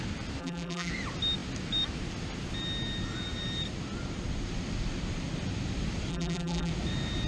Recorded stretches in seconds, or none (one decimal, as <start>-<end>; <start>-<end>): 0.0-0.4; 0.9-6.1; 6.7-7.3